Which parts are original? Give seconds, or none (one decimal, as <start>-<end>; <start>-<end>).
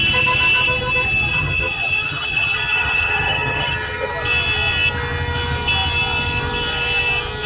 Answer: 0.0-1.3; 4.1-7.5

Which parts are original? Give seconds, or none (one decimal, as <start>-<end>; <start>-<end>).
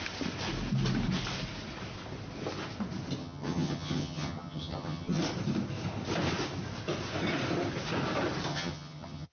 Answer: 0.0-3.2; 5.2-8.5